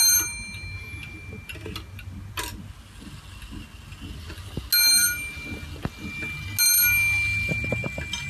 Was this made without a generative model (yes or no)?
yes